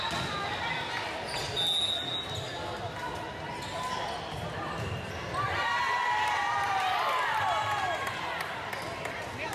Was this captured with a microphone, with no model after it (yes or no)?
yes